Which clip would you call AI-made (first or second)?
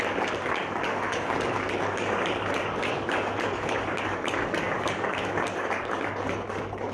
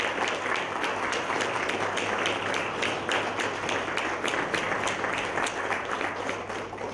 first